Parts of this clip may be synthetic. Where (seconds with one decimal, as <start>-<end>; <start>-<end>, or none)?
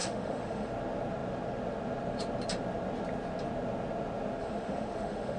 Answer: 0.0-0.7; 4.4-5.4